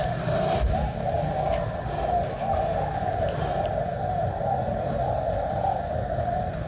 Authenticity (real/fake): real